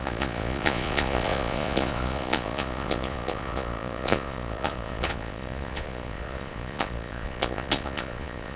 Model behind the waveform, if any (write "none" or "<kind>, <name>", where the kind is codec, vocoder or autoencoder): vocoder, Vocos